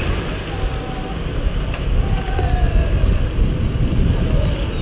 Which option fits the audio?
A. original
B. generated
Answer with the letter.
A